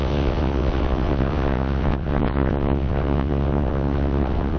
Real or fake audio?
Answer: fake